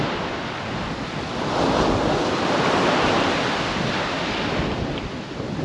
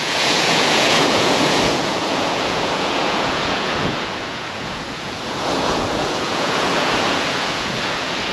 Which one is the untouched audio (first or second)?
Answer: first